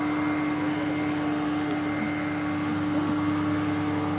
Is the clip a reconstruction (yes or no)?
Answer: no